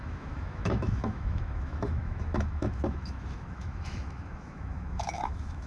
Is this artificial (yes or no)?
yes